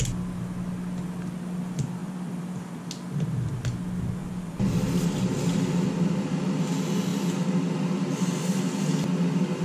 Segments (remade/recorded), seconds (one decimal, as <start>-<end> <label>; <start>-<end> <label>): 0.0-2.0 recorded; 2.0-2.6 remade; 2.6-4.2 recorded; 4.2-6.6 remade; 6.6-9.6 recorded